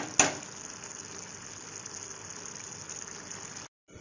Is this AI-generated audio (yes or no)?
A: no